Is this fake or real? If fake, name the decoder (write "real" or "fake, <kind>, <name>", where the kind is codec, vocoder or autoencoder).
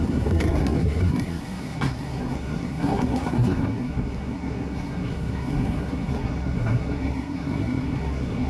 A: fake, codec, SNAC